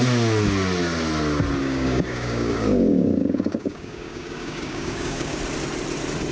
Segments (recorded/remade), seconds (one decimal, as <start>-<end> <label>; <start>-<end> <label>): 0.0-1.6 recorded; 1.6-5.4 remade; 5.4-6.3 recorded